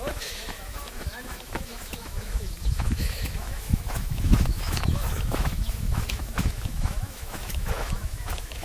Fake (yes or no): yes